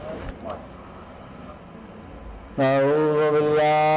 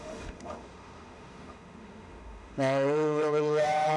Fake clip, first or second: second